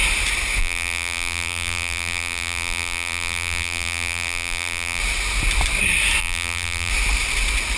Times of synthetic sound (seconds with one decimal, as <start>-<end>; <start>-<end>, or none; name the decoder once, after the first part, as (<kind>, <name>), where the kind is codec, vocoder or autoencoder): 0.6-5.0 (vocoder, BigVGAN v2); 6.2-6.9